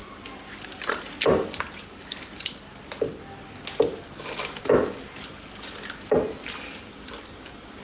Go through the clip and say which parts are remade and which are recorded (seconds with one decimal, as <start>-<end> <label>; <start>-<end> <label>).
0.0-7.8 recorded